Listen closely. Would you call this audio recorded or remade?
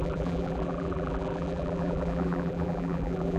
remade